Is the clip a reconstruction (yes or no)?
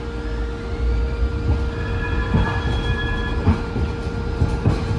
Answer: no